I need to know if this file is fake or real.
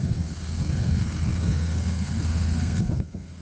fake